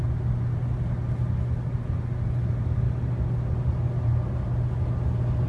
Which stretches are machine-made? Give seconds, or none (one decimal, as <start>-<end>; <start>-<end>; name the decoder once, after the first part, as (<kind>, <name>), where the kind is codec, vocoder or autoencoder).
none